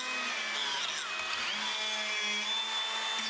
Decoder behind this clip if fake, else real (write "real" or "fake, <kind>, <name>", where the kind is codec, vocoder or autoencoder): real